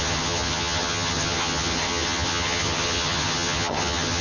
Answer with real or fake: fake